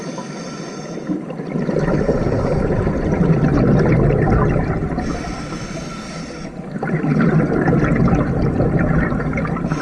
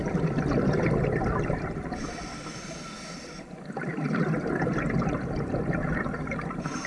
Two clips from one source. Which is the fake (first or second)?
second